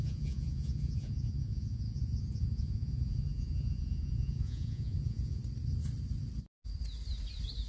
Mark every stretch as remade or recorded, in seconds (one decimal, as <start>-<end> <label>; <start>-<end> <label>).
0.0-5.4 remade; 5.4-7.7 recorded